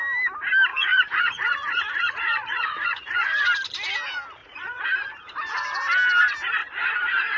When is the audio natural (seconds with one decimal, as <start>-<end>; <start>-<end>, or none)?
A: 0.0-0.7; 3.4-4.4; 4.9-6.6